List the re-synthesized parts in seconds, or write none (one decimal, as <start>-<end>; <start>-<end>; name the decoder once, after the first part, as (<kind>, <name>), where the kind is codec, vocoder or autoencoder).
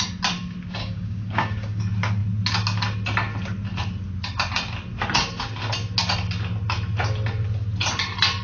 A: 0.8-1.8 (codec, DAC)